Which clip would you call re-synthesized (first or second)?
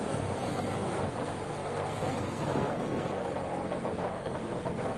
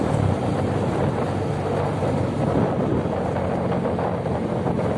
first